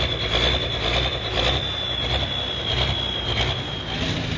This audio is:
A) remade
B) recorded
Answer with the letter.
B